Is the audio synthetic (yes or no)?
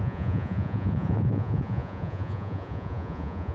yes